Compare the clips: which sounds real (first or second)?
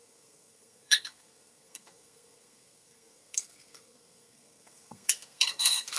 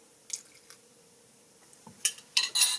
second